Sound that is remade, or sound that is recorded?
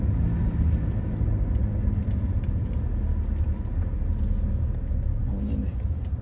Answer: recorded